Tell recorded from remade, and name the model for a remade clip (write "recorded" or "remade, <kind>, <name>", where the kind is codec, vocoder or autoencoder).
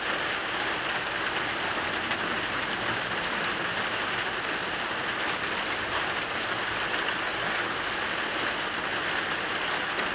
recorded